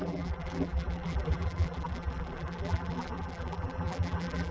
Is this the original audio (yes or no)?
no